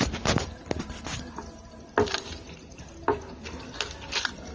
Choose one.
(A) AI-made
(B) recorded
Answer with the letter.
B